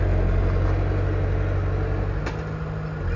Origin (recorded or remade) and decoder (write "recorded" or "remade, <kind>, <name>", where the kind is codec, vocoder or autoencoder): recorded